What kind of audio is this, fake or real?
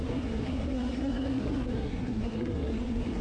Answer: fake